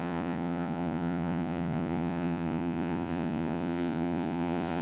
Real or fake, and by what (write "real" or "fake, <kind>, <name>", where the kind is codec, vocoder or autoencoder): fake, vocoder, Vocos